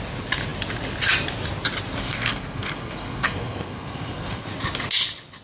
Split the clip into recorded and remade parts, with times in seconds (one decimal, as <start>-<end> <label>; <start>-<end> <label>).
0.0-2.0 recorded; 2.0-4.5 remade; 4.5-5.4 recorded